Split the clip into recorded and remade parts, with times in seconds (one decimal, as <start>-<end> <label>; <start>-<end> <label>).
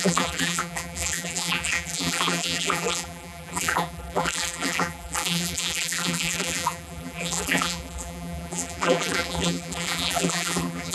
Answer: 0.0-10.9 remade